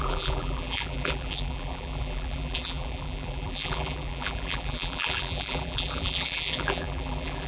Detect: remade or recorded remade